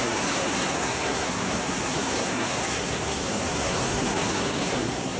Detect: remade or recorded remade